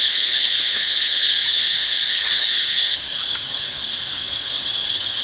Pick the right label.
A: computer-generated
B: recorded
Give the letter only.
A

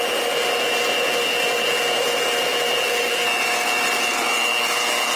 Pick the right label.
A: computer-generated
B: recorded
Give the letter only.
B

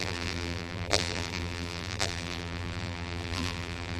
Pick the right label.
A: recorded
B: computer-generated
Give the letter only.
B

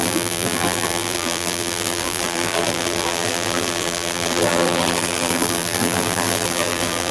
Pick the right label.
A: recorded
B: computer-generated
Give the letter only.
B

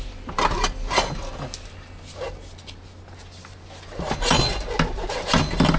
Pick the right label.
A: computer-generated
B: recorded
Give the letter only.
B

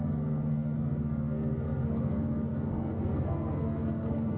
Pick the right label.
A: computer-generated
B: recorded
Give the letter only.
A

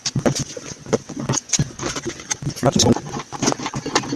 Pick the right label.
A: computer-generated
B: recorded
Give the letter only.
A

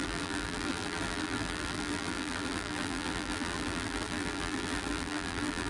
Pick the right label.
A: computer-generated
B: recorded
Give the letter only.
A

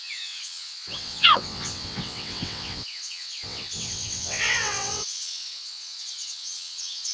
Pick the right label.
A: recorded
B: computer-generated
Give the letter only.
B